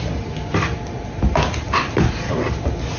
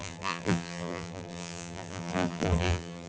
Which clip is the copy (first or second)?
second